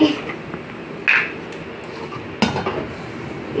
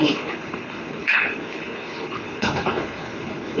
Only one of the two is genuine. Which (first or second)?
first